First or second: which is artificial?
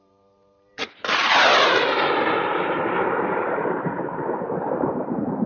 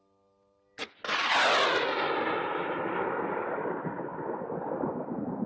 first